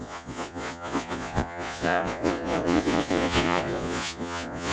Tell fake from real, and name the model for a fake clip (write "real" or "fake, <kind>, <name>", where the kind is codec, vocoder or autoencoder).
fake, vocoder, Vocos